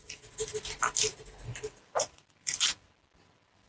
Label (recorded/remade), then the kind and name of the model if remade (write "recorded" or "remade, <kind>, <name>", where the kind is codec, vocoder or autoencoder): recorded